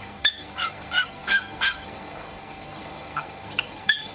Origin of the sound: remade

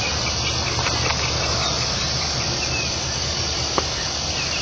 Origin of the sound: recorded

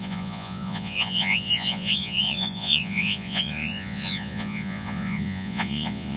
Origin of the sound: remade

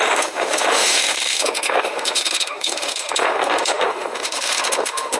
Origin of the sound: remade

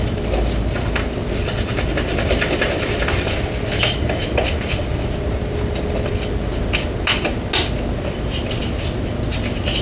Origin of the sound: recorded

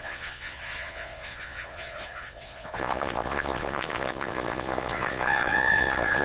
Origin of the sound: remade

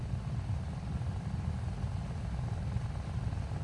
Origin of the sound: recorded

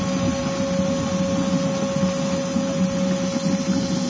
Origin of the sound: recorded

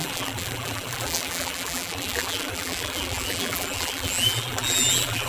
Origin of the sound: remade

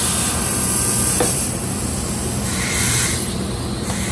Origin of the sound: remade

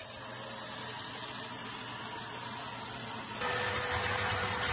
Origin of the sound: recorded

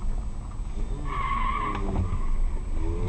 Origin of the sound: recorded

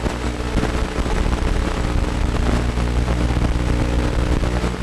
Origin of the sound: recorded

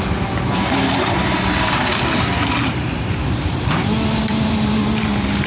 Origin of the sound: remade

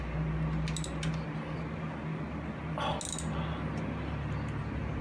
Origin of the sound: recorded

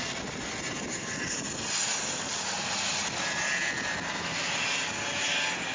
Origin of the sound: recorded